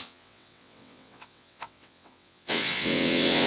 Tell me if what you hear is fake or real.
fake